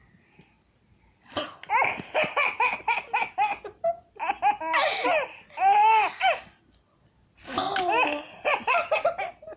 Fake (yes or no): no